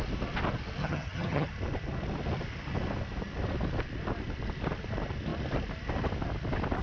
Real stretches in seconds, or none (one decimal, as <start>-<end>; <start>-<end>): 0.0-0.8; 1.5-6.8

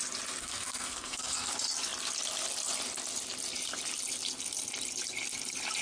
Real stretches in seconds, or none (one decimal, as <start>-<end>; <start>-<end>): 0.0-0.4; 1.5-5.8

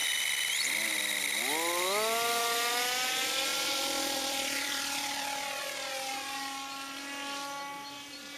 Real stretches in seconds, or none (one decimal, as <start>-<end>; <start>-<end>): 0.0-3.5; 5.9-8.4

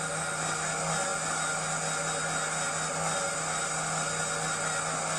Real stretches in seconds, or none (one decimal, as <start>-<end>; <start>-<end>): 0.0-5.2

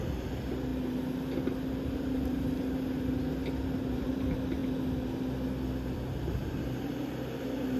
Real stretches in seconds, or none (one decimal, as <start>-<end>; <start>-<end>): 0.0-7.8